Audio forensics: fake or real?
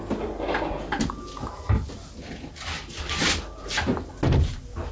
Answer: real